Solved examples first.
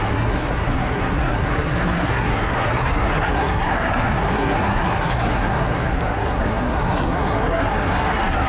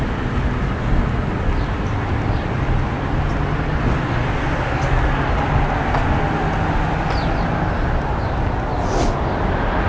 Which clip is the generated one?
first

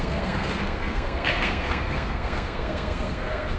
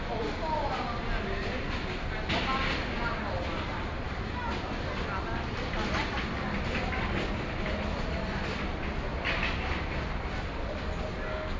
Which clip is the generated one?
first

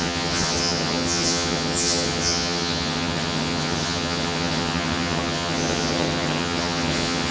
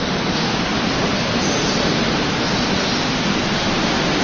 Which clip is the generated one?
first